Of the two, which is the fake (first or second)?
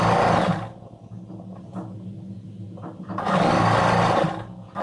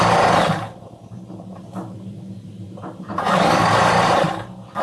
second